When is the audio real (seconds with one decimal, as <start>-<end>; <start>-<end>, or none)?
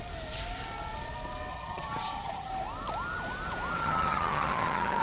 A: 0.0-1.5; 2.5-3.8